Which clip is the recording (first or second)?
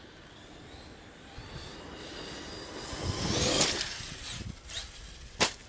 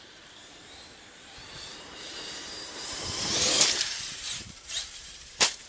first